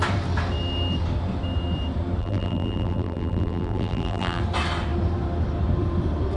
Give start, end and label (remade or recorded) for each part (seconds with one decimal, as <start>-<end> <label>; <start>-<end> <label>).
0.0-2.2 recorded; 2.2-4.4 remade; 4.4-6.4 recorded